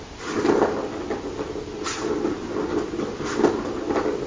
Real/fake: real